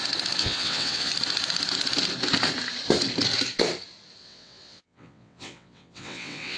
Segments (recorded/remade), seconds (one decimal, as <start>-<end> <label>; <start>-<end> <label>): 0.0-0.4 recorded; 0.4-1.1 remade; 1.1-4.2 recorded; 4.2-6.6 remade